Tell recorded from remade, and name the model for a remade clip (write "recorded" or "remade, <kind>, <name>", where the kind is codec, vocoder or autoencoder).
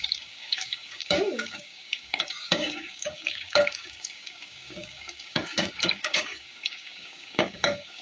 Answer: remade, codec, DAC